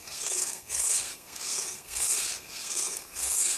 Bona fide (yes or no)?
no